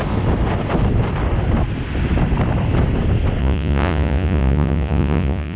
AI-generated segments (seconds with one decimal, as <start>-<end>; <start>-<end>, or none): 3.4-5.6